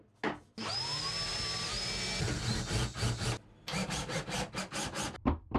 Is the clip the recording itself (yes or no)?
yes